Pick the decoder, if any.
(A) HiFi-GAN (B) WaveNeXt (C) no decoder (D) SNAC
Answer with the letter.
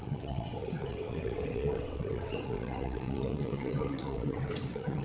B